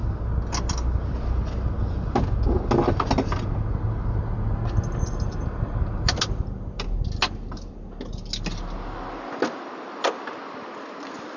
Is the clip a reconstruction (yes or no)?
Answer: no